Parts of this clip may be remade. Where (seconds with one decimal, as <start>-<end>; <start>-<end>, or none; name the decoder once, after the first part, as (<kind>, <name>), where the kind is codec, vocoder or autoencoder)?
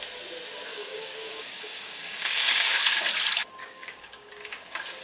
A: 0.7-2.8 (codec, DAC); 3.6-4.3